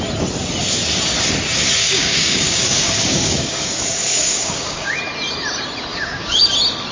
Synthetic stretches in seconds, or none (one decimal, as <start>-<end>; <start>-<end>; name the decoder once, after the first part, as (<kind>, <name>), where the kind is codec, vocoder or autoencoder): 1.8-5.0 (codec, DAC); 5.9-6.4

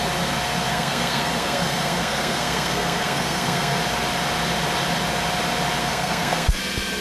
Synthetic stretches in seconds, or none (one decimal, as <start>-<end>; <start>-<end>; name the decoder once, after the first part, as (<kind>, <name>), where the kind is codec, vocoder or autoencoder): 0.7-3.8 (codec, SNAC); 5.8-6.6

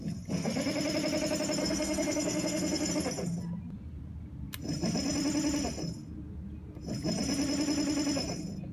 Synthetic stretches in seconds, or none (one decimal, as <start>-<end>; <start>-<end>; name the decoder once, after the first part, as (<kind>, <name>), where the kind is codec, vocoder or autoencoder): 1.6-2.9 (codec, SNAC)

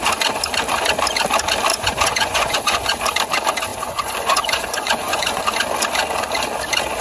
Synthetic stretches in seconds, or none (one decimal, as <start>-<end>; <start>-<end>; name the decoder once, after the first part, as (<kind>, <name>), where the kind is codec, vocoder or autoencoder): 1.7-3.0 (vocoder, Vocos); 3.7-5.4

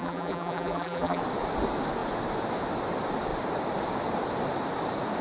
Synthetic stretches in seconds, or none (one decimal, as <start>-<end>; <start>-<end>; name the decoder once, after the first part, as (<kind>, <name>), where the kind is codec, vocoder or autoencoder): 0.0-1.2 (vocoder, BigVGAN v2)

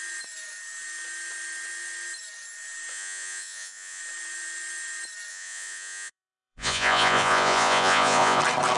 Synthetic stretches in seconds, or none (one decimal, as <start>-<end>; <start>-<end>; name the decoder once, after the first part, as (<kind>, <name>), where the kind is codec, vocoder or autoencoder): 2.9-4.0 (vocoder, Vocos); 5.3-8.4

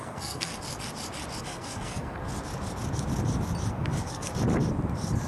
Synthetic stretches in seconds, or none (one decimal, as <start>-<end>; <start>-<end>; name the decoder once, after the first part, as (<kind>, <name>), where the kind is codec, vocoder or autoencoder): 0.0-0.5 (codec, SNAC); 1.4-2.2; 3.7-4.3

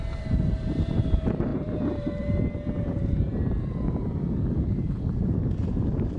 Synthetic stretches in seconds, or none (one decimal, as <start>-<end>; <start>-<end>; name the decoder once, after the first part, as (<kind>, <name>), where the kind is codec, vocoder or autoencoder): 0.0-6.2 (vocoder, BigVGAN v2)